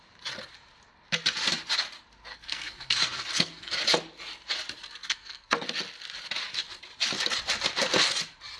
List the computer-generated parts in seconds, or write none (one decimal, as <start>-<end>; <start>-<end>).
2.3-3.7; 5.0-5.5